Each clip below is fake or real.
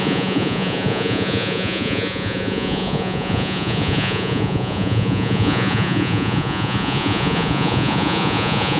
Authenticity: fake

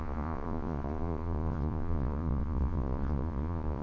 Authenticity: fake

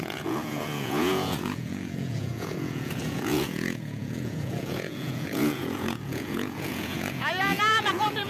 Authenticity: fake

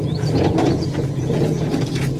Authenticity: fake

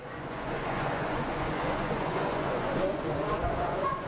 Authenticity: fake